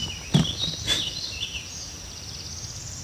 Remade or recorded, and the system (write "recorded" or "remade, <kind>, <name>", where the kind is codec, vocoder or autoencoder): recorded